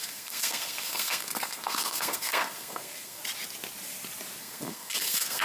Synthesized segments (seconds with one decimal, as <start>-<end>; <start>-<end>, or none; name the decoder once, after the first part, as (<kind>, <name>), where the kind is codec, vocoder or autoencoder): 0.0-3.2 (codec, SNAC); 4.4-5.4